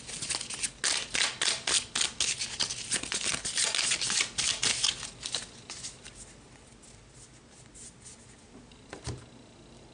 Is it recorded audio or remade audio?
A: recorded